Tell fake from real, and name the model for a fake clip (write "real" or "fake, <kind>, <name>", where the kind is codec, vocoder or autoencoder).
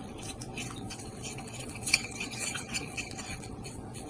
fake, vocoder, WaveNeXt